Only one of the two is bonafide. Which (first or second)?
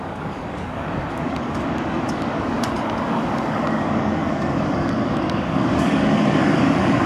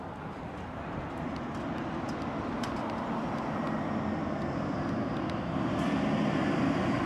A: second